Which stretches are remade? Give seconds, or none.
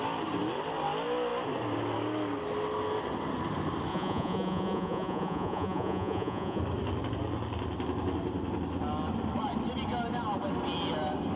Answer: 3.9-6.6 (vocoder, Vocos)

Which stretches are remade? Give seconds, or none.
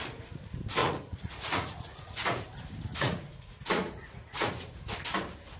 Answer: 0.8-2.4 (vocoder, Vocos); 2.9-4.5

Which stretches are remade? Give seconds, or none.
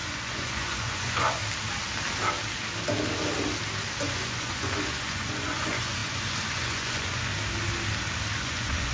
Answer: 0.0-1.4 (vocoder, Vocos); 4.0-7.3; 8.4-8.9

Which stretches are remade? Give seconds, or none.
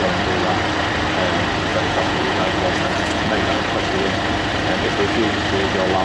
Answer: 1.7-3.6 (vocoder, Vocos)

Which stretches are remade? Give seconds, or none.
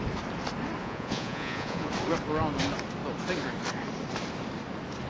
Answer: 0.8-1.9 (vocoder, Vocos)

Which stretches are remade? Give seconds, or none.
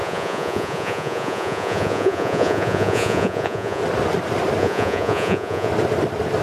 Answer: 0.0-3.8 (vocoder, Vocos); 4.6-5.7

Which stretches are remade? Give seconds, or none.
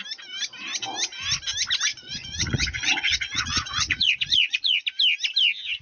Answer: 1.9-4.8 (vocoder, Vocos)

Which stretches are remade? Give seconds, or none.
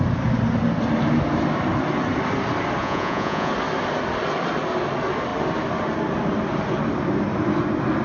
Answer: 2.8-3.5 (vocoder, Vocos)